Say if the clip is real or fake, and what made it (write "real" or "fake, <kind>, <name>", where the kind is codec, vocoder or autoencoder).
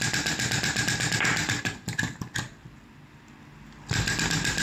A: real